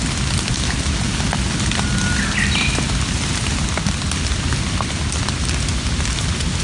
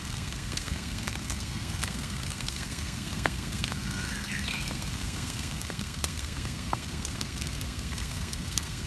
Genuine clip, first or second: first